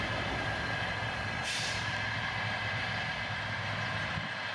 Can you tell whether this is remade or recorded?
remade